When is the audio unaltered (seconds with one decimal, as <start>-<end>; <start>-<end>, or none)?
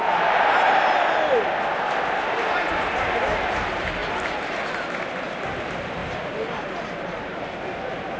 0.9-4.0; 4.6-6.0; 7.4-8.2